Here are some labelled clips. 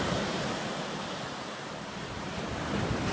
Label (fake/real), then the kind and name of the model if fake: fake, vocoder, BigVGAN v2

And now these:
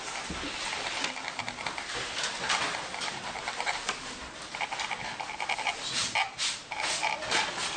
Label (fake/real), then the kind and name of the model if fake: real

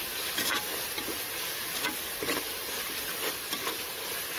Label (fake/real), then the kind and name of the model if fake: real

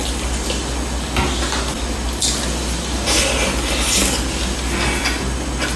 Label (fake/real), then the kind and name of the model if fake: real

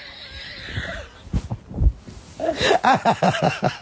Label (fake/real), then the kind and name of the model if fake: real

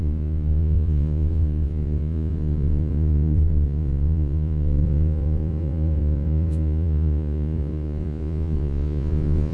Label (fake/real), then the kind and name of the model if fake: fake, vocoder, Vocos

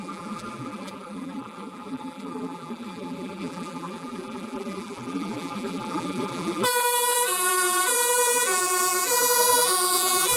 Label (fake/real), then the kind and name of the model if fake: fake, vocoder, BigVGAN v2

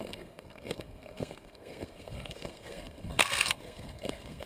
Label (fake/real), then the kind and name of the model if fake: fake, codec, SNAC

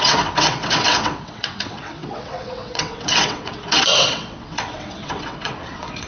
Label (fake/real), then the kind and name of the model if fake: fake, vocoder, WaveNeXt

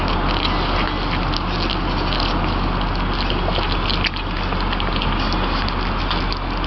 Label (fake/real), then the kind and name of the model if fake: real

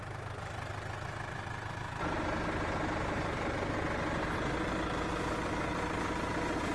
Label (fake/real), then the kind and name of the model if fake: real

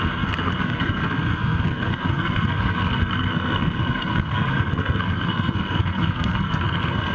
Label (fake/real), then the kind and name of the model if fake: fake, codec, SNAC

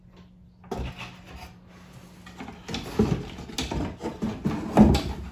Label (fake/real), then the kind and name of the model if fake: real